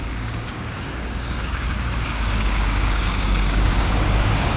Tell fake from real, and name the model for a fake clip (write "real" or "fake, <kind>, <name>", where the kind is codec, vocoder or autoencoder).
fake, codec, DAC